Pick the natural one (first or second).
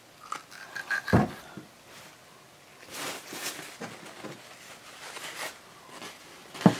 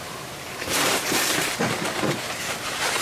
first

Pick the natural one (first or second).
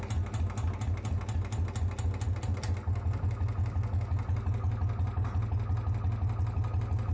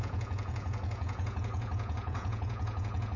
first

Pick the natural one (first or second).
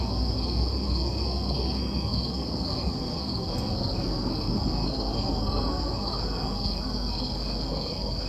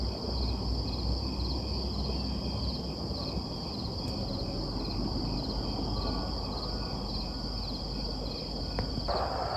second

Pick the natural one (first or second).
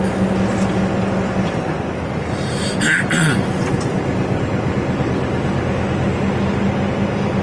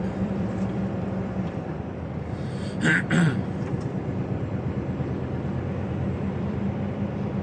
first